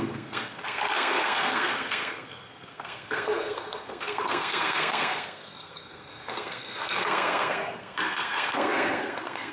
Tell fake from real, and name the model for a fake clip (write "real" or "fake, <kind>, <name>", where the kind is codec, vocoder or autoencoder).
fake, codec, SNAC